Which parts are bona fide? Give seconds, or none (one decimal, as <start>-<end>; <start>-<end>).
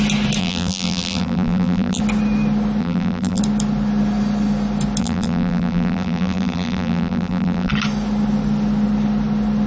0.0-0.4; 2.0-2.8; 3.4-5.0; 7.7-9.7